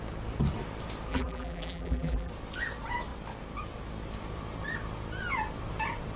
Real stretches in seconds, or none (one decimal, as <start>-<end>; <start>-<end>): 0.0-1.1; 2.3-6.2